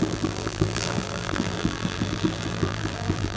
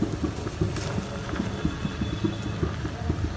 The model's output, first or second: first